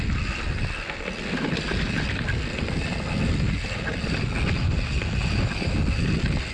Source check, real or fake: real